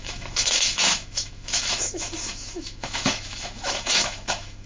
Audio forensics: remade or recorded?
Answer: remade